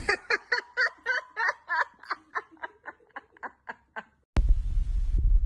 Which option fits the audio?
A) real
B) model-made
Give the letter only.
A